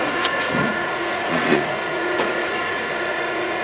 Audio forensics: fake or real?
fake